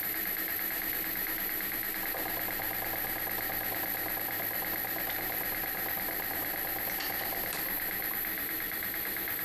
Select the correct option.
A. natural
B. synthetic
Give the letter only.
A